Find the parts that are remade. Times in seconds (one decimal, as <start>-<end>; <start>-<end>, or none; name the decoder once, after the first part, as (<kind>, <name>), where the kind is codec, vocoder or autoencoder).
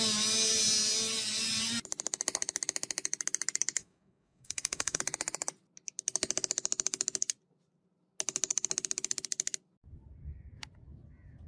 3.8-5.0 (codec, DAC)